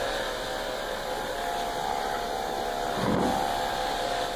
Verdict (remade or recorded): recorded